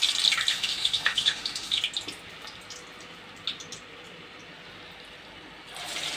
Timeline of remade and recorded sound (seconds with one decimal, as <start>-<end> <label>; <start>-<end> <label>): 0.0-0.5 recorded; 0.5-1.8 remade; 1.8-6.2 recorded